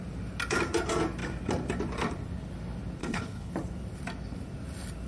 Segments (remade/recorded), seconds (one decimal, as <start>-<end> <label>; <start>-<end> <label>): 0.0-3.0 recorded; 3.0-3.5 remade; 3.5-5.1 recorded